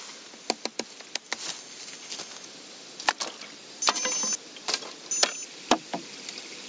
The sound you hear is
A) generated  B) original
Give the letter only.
B